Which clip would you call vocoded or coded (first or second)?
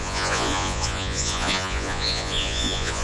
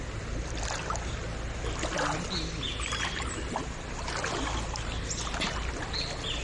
first